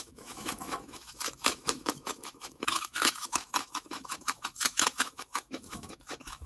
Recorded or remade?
remade